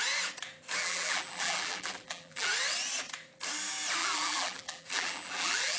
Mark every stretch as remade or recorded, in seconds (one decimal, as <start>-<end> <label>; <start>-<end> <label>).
0.0-0.8 recorded; 0.8-2.5 remade; 2.5-4.0 recorded; 4.0-5.8 remade

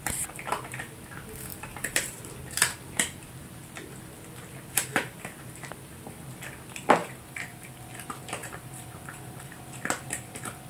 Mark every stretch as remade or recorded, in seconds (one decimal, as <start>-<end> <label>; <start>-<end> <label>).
0.0-1.5 recorded; 1.5-2.3 remade; 2.3-4.9 recorded; 4.9-5.7 remade; 5.7-7.0 recorded; 7.0-7.8 remade; 7.8-8.4 recorded; 8.4-9.6 remade; 9.6-10.7 recorded

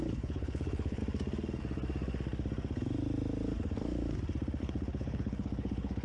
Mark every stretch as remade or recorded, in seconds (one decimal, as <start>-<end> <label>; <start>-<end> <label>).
0.0-1.0 remade; 1.0-4.6 recorded; 4.6-6.0 remade

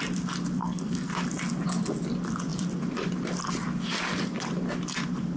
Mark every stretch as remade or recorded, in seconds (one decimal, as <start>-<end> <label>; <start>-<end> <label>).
0.0-0.6 recorded; 0.6-1.1 remade; 1.1-5.4 recorded

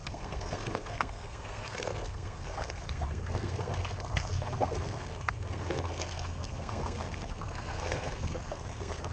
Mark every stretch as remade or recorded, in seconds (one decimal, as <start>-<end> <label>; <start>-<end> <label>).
0.0-9.1 remade

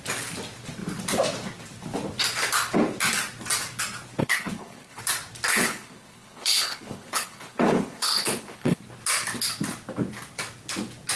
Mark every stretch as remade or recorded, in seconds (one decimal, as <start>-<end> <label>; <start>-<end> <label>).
0.0-4.2 recorded; 4.2-5.0 remade; 5.0-5.5 recorded; 5.5-8.8 remade; 8.8-11.2 recorded

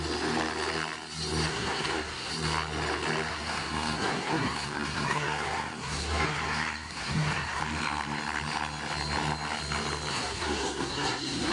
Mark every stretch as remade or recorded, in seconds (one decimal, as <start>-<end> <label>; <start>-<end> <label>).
0.0-1.5 recorded; 1.5-2.3 remade; 2.3-3.3 recorded; 3.3-7.6 remade; 7.6-10.1 recorded; 10.1-11.5 remade

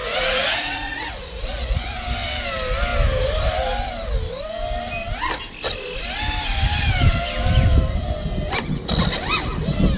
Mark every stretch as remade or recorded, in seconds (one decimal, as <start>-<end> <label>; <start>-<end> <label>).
0.0-2.0 remade; 2.0-10.0 recorded